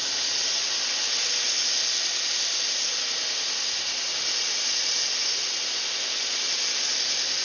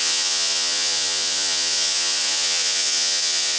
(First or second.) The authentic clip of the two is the first